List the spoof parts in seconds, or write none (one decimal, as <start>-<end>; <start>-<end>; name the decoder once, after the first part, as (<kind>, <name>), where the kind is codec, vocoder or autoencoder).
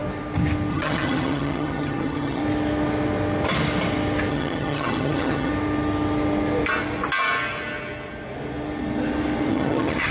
0.7-2.4 (vocoder, HiFi-GAN); 4.3-5.5; 9.5-10.1